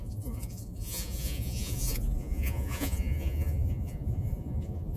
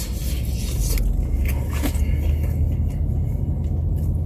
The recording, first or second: second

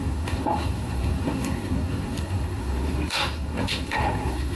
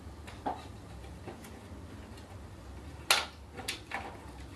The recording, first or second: second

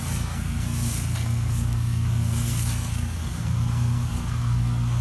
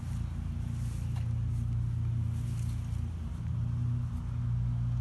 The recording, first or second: second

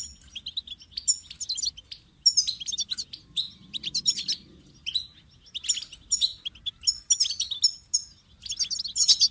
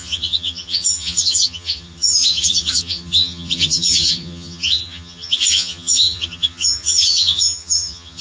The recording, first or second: first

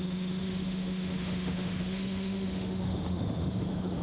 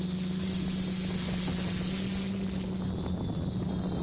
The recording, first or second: second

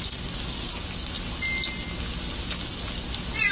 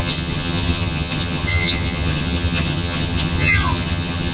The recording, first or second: first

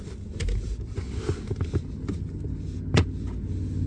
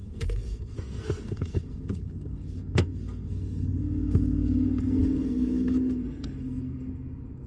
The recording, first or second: first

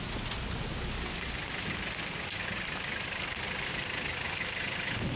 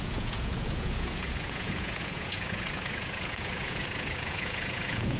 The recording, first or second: first